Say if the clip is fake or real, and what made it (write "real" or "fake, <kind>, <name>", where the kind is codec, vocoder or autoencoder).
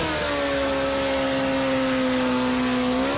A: real